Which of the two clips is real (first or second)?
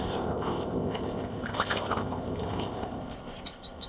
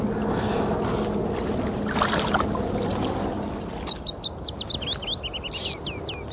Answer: second